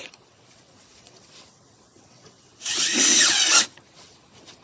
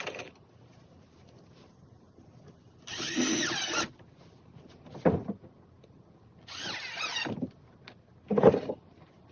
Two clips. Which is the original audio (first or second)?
second